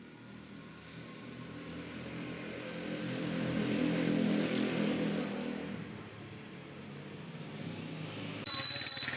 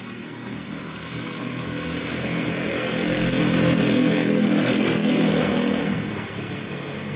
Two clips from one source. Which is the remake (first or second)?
second